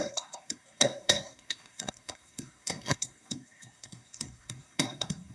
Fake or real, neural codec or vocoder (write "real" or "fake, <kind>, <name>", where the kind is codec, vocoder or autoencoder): fake, codec, SNAC